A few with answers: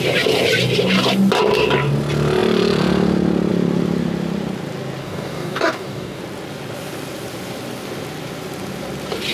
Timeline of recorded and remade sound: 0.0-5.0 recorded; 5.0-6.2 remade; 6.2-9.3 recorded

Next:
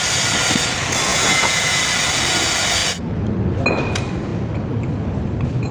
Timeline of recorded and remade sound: 0.0-1.1 recorded; 1.1-1.8 remade; 1.8-5.7 recorded

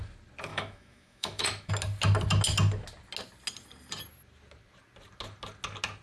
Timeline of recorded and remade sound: 0.0-0.5 recorded; 0.5-1.7 remade; 1.7-6.0 recorded

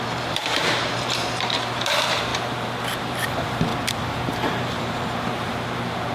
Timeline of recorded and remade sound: 0.0-2.3 remade; 2.3-3.0 recorded; 3.0-3.7 remade; 3.7-4.8 recorded; 4.8-6.1 remade